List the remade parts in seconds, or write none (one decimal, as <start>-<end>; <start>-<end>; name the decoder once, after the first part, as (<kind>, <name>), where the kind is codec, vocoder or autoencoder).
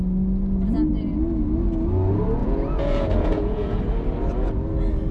2.4-3.8 (vocoder, Vocos)